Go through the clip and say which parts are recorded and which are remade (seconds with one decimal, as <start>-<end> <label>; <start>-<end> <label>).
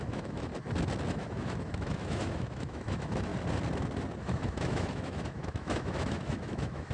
0.0-0.5 remade; 0.5-1.1 recorded; 1.1-3.3 remade; 3.3-4.2 recorded; 4.2-6.9 remade